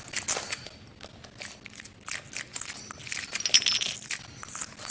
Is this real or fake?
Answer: real